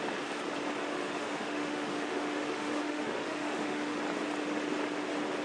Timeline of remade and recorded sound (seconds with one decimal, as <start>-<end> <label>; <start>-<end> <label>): 0.0-0.8 recorded; 0.8-4.0 remade; 4.0-5.4 recorded